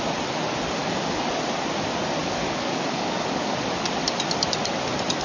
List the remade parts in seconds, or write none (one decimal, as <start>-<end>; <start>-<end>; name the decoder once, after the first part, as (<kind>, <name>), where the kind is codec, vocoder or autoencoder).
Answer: 0.8-1.3 (codec, DAC); 2.2-3.6